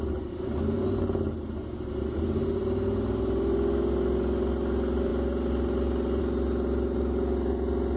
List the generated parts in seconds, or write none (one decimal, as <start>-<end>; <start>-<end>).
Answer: none